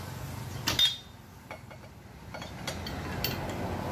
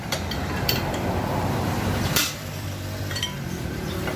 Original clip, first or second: first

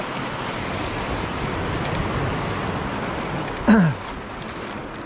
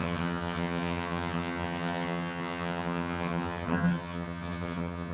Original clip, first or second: first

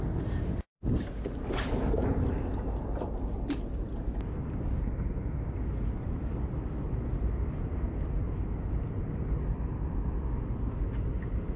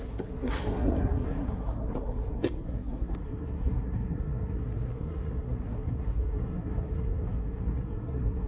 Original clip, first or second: first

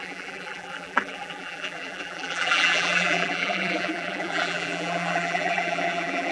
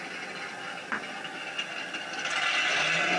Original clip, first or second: second